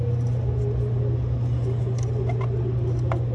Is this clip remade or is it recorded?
recorded